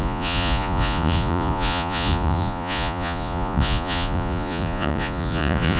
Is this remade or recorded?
remade